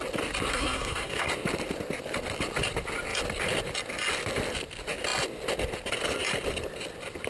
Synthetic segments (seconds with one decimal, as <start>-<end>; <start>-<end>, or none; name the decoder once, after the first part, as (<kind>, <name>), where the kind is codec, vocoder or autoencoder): 0.5-1.3 (codec, SNAC)